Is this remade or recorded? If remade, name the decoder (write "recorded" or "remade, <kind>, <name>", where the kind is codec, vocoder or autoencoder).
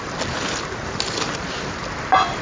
recorded